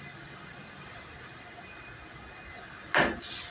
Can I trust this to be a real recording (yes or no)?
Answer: yes